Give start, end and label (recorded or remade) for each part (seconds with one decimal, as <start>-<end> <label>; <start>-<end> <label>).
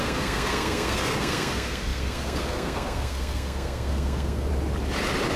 0.0-4.5 remade; 4.5-5.4 recorded